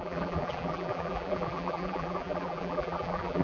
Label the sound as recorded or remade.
remade